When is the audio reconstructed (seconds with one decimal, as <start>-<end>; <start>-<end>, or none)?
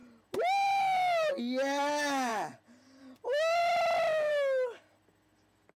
none